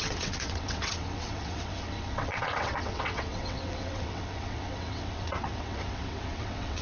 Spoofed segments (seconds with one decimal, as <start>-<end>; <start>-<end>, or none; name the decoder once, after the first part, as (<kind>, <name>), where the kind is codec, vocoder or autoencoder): 0.0-6.8 (vocoder, WaveNeXt)